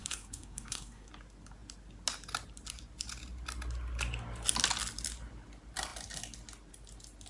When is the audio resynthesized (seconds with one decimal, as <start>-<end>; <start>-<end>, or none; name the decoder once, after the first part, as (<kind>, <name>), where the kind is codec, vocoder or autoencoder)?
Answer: 0.0-1.1 (codec, SNAC)